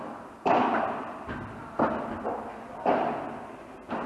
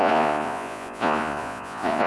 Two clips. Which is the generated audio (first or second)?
second